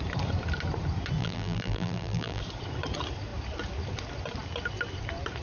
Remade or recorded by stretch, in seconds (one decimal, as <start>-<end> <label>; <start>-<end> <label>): 0.0-1.2 recorded; 1.2-2.4 remade; 2.4-5.4 recorded